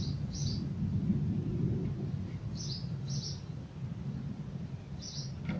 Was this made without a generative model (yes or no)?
yes